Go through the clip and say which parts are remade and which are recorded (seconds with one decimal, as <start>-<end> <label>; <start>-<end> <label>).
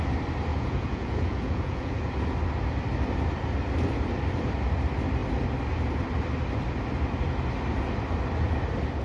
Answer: 0.0-0.5 recorded; 0.5-2.0 remade; 2.0-9.0 recorded